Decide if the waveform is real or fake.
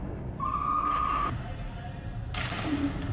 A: real